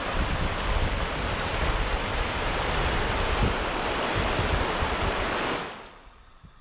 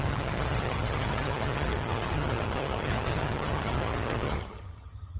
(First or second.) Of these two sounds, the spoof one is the second